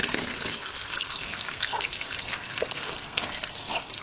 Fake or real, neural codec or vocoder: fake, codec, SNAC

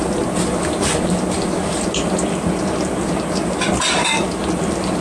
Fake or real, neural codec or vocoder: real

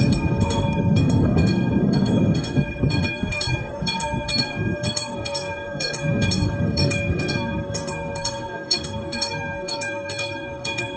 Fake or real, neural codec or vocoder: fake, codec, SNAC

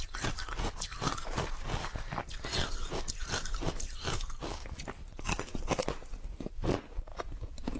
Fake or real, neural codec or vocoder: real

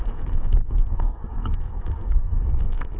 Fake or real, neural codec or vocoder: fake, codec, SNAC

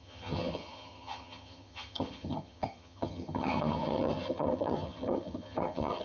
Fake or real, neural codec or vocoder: fake, vocoder, HiFi-GAN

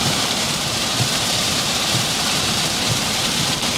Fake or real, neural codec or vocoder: fake, vocoder, BigVGAN v2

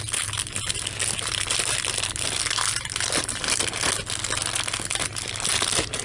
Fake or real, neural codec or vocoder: real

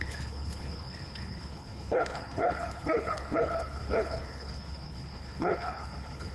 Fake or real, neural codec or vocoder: fake, codec, HILCodec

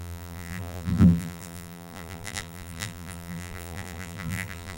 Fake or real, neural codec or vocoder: fake, vocoder, BigVGAN v2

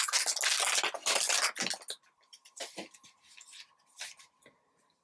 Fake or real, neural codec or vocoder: real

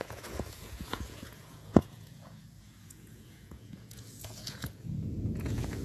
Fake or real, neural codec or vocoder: fake, vocoder, Vocos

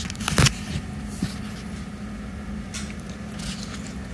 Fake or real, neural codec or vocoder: real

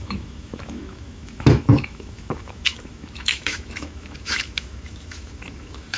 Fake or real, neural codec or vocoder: fake, autoencoder, DAC-VAE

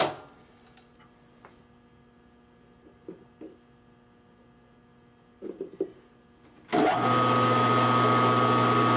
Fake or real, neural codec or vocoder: real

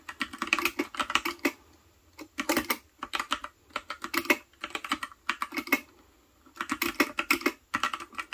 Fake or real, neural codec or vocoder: real